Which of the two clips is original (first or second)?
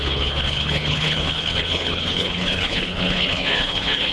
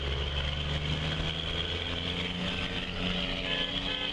second